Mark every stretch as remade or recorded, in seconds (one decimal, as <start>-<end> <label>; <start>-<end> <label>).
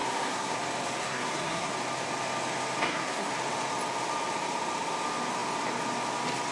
0.0-0.6 remade; 0.6-1.0 recorded; 1.0-1.7 remade; 1.7-2.8 recorded; 2.8-3.3 remade; 3.3-6.5 recorded